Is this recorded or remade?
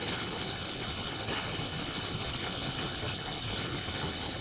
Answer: remade